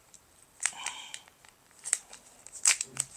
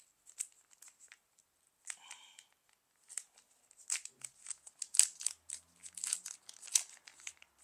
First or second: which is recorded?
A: second